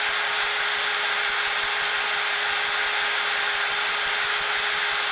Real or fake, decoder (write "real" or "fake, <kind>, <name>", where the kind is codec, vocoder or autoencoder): real